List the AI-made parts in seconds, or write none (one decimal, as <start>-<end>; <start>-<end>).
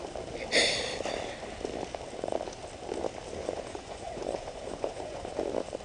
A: 3.4-5.3